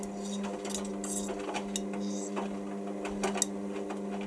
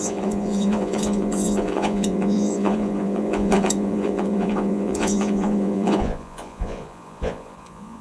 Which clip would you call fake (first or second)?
second